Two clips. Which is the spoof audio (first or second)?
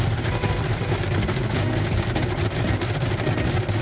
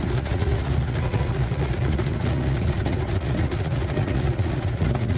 second